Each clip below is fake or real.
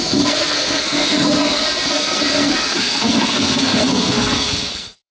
fake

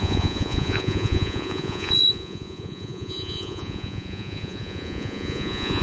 fake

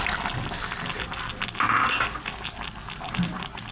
real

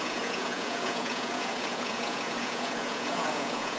fake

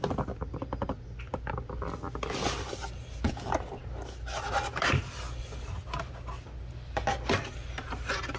real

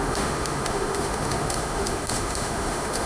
fake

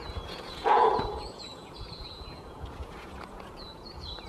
fake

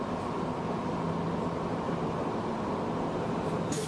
real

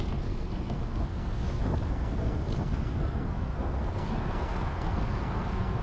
fake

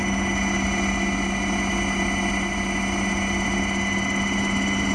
real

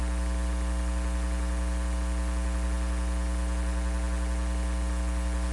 real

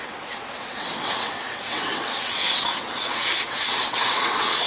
fake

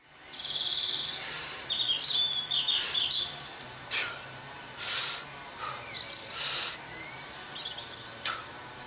fake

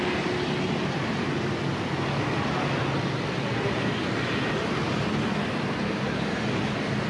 real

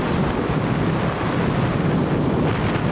real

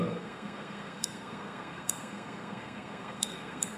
fake